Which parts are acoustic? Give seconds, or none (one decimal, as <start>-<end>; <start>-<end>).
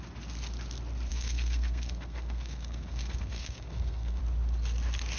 0.0-1.1; 4.2-5.2